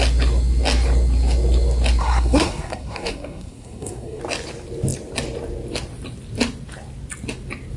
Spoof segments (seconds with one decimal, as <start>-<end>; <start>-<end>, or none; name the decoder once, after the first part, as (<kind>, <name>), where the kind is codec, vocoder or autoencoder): 2.0-4.2 (codec, SNAC)